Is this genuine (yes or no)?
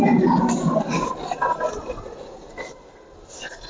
yes